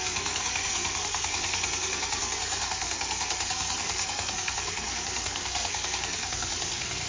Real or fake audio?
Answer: fake